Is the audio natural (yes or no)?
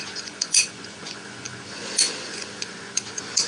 no